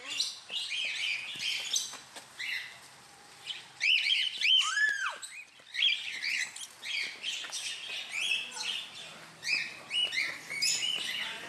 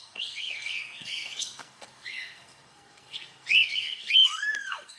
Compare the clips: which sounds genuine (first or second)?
first